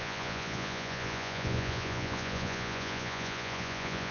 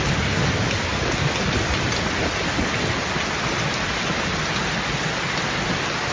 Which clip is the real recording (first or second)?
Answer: second